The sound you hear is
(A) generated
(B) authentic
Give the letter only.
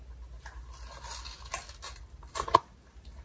B